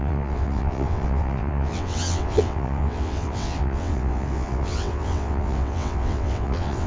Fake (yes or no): yes